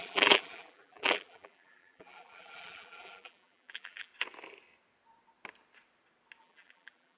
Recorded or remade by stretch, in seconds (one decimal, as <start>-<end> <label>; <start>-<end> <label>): 0.0-4.1 remade; 4.1-6.4 recorded; 6.4-7.2 remade